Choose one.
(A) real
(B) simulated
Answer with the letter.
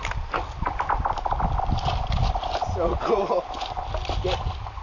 A